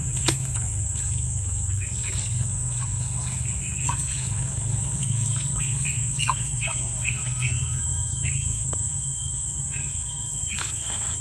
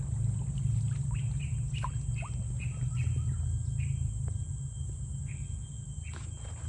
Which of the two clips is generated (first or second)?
first